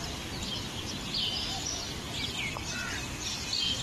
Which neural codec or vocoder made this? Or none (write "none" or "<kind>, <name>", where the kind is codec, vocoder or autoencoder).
none